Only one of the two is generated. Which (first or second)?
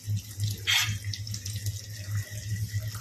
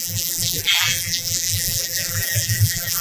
second